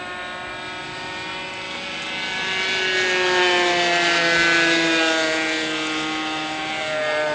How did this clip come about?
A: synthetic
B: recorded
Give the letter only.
B